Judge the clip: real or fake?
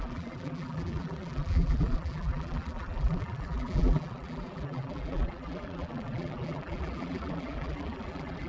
fake